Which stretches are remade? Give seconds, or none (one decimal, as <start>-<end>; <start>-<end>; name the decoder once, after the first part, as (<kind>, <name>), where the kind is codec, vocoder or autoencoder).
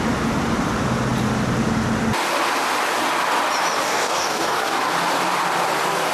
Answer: 3.8-4.8 (codec, DAC)